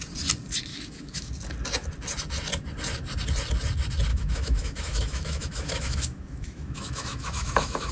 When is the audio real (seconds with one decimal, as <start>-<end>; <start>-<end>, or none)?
0.0-0.7; 1.3-4.1